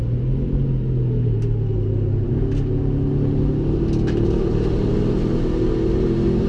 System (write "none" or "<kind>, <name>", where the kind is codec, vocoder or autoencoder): none